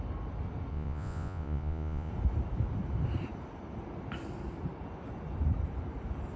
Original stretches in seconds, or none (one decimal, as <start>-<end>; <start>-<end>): 0.0-0.7; 2.1-6.4